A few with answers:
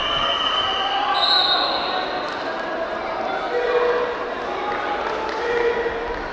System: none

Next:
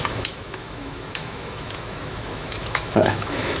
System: autoencoder, DAC-VAE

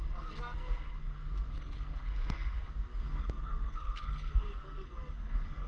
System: codec, SNAC